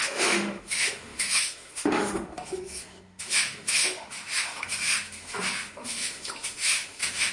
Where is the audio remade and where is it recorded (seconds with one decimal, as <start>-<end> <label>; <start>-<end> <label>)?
0.0-7.3 remade